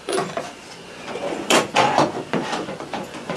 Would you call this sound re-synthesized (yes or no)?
yes